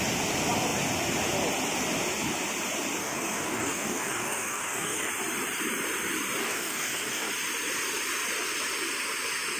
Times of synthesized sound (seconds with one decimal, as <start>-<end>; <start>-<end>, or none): 3.0-5.1; 6.4-7.3